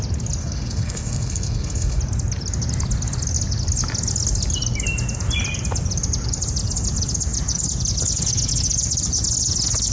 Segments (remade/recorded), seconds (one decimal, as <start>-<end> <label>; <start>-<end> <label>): 0.0-0.4 recorded; 0.4-2.0 remade; 2.0-9.9 recorded